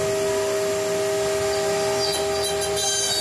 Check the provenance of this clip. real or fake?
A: real